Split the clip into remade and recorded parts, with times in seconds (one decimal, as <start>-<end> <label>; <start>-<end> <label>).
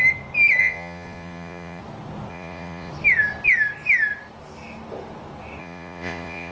0.0-0.6 recorded; 0.6-1.8 remade; 1.8-2.3 recorded; 2.3-2.9 remade; 2.9-5.6 recorded; 5.6-6.5 remade